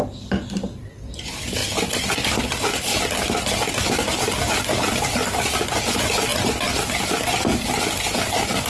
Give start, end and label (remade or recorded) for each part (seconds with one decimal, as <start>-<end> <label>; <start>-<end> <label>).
0.0-8.7 recorded